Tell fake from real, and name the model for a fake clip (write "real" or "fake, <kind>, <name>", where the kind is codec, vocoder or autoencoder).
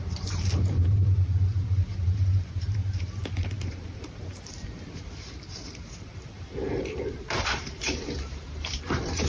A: fake, vocoder, BigVGAN v2